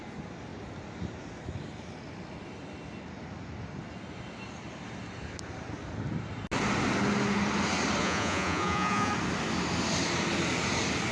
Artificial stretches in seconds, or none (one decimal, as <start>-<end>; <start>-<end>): 8.0-9.1